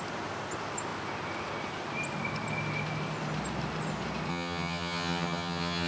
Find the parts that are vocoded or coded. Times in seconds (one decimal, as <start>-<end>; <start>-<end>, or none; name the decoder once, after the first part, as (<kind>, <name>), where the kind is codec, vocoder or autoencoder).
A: 4.3-5.9 (vocoder, HiFi-GAN)